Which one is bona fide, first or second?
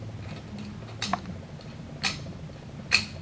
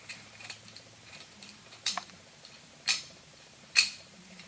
first